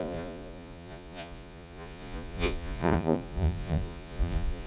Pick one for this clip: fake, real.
fake